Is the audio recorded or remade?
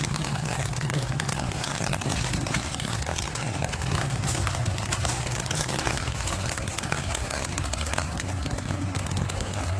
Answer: remade